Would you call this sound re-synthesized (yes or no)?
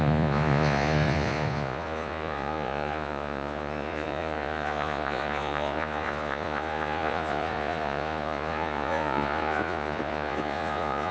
yes